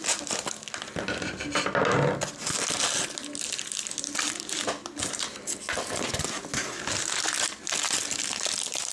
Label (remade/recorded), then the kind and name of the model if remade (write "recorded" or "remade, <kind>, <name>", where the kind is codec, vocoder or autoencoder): recorded